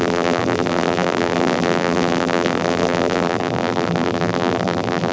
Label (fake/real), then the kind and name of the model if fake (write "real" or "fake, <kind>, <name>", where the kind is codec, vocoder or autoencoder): fake, vocoder, BigVGAN v2